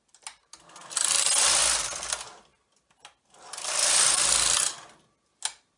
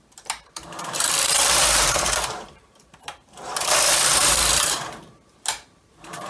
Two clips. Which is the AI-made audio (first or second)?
second